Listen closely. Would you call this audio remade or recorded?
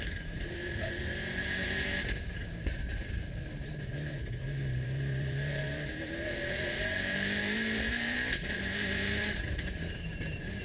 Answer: remade